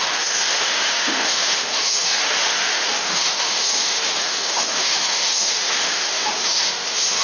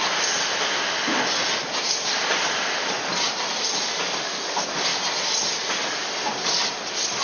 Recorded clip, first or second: second